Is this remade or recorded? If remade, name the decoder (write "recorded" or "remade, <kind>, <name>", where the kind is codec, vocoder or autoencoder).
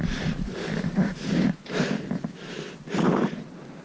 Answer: remade, vocoder, BigVGAN v2